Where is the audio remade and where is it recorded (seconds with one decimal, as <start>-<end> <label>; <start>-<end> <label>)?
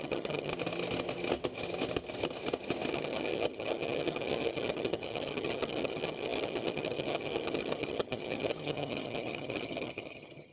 0.0-0.5 remade; 0.5-2.9 recorded; 2.9-10.5 remade